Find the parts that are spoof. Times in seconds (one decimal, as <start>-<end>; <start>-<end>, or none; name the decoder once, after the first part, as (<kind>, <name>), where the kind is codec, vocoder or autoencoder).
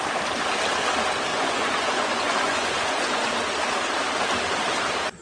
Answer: 1.3-3.3 (vocoder, Vocos)